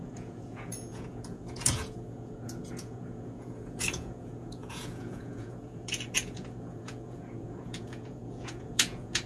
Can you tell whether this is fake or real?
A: fake